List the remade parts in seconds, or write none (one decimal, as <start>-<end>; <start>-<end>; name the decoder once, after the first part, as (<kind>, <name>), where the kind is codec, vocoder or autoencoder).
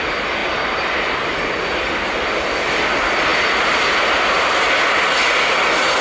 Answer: none